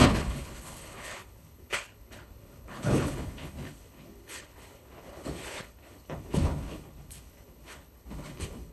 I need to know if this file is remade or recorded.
remade